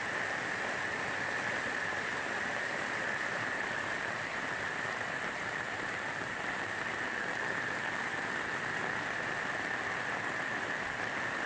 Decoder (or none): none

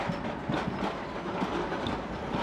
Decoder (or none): none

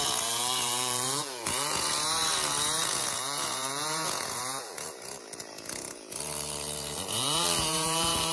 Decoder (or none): vocoder, Vocos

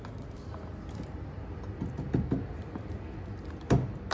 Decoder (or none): none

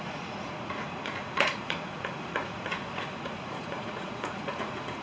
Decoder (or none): vocoder, Vocos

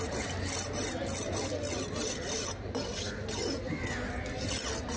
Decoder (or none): none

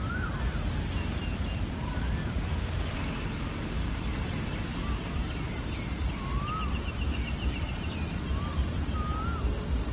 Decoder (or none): none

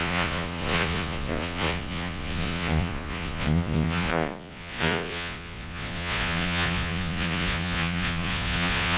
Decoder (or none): vocoder, Vocos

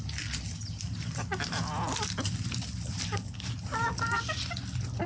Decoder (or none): none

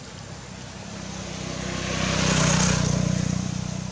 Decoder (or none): none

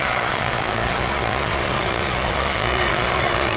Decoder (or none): vocoder, Vocos